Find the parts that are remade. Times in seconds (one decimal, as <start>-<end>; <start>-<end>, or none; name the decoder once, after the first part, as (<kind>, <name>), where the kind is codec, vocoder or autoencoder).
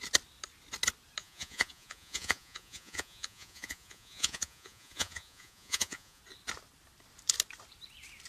1.2-6.2 (vocoder, Vocos)